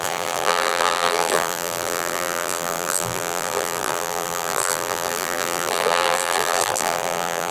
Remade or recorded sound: remade